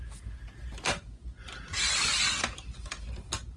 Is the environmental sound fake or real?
real